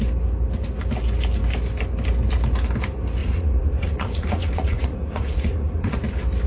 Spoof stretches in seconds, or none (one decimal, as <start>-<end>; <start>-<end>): 3.2-6.0